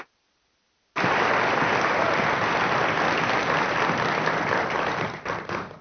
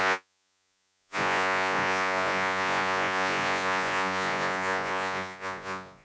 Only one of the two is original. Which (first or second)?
first